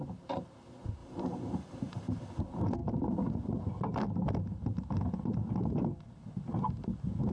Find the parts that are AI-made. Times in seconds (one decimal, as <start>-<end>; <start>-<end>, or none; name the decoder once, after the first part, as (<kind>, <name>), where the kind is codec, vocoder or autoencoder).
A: 1.0-2.4 (vocoder, BigVGAN v2)